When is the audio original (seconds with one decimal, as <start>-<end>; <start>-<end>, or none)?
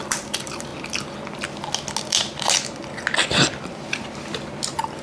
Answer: 0.7-3.7